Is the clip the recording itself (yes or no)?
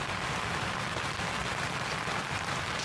yes